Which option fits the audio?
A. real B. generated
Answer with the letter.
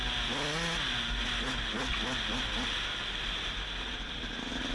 A